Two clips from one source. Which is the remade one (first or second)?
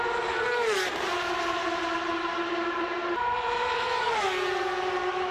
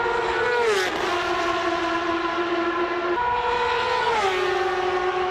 first